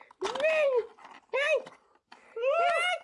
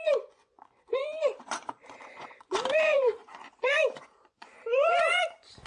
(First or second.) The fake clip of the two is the second